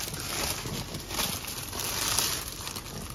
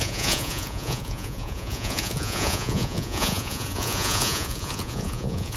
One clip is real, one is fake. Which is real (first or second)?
first